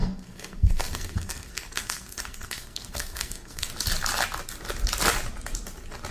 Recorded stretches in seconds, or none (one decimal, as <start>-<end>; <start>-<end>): 3.7-6.1